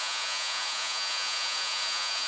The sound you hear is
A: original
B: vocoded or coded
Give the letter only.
B